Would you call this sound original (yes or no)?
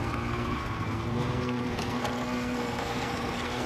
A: no